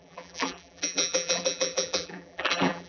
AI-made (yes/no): yes